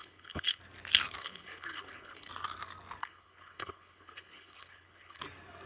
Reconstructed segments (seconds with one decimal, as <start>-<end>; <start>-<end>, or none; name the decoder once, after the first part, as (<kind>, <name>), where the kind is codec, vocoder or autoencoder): 0.0-0.6 (codec, HILCodec); 1.2-2.3; 3.0-5.2

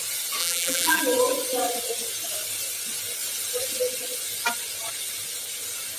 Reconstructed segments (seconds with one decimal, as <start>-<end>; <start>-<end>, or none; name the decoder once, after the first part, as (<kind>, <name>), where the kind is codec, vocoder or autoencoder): 0.4-1.0 (vocoder, BigVGAN v2)

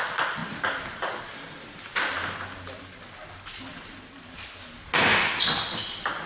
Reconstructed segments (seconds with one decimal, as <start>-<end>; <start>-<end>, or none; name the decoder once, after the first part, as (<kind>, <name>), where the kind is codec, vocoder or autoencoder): 0.0-1.9 (vocoder, BigVGAN v2); 5.7-6.3